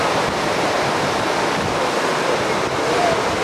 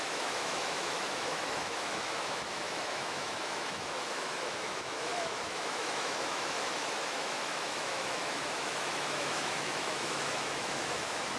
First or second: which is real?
first